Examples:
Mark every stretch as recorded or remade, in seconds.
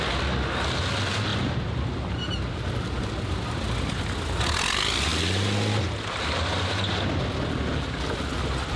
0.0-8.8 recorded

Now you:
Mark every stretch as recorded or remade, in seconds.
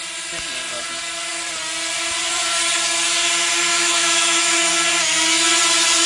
0.0-3.7 recorded; 3.7-4.7 remade; 4.7-6.1 recorded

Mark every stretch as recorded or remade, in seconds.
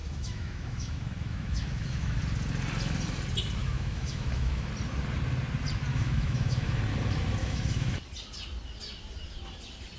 0.0-2.2 remade; 2.2-3.6 recorded; 3.6-4.7 remade; 4.7-5.9 recorded; 5.9-6.8 remade; 6.8-7.4 recorded; 7.4-8.0 remade; 8.0-10.0 recorded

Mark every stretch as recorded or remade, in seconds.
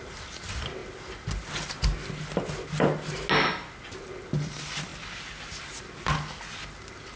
0.0-7.2 recorded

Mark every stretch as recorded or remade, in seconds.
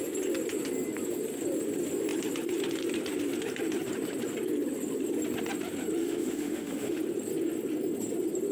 0.0-6.0 recorded; 6.0-7.0 remade; 7.0-8.5 recorded